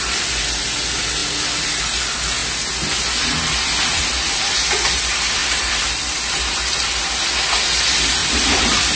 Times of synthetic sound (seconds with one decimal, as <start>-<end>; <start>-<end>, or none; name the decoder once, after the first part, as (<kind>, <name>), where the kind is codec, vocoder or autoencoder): 5.4-6.3 (vocoder, BigVGAN v2); 8.2-9.0